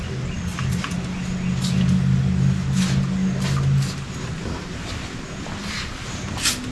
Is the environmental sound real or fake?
real